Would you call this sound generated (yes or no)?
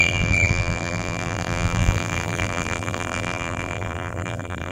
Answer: yes